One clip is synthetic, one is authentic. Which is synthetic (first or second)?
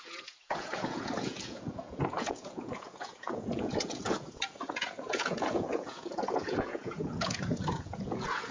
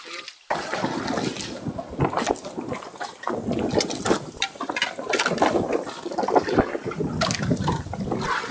first